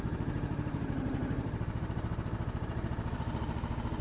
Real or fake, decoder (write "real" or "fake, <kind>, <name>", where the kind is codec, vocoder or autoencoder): fake, vocoder, BigVGAN v2